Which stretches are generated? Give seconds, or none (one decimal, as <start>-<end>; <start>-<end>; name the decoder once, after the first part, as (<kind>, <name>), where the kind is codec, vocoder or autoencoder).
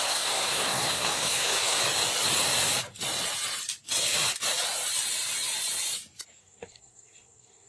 0.0-1.8 (codec, SNAC); 6.4-7.7